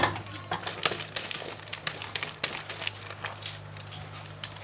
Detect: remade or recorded recorded